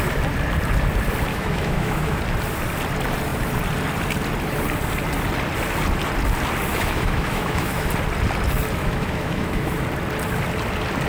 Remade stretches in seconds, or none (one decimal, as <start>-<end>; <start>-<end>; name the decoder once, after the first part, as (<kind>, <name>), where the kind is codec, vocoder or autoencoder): 1.3-2.2 (autoencoder, DAC-VAE); 6.7-7.9; 8.8-9.7